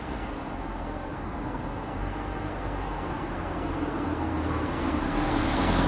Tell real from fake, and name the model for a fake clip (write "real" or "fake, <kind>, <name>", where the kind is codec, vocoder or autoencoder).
fake, codec, SNAC